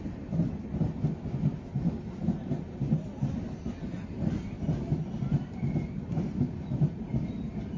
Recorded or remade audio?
recorded